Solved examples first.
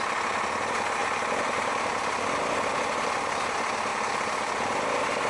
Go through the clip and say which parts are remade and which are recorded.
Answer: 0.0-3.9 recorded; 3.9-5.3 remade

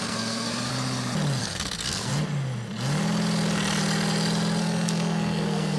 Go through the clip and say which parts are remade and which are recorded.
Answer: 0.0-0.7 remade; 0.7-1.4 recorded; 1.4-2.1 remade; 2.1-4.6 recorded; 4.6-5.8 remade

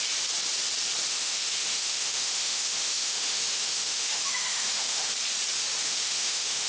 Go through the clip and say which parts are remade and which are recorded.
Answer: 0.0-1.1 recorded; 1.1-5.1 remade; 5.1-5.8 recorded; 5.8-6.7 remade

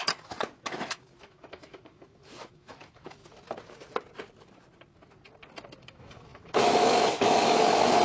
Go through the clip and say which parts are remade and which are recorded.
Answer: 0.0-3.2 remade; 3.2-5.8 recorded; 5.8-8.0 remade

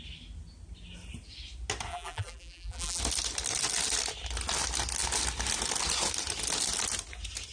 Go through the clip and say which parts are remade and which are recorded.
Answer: 0.0-1.9 recorded; 1.9-3.0 remade; 3.0-7.5 recorded